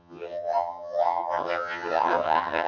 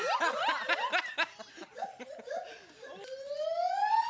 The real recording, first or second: second